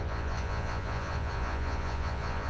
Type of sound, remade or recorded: remade